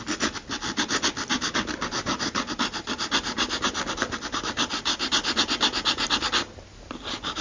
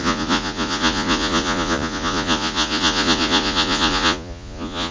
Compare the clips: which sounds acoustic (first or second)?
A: first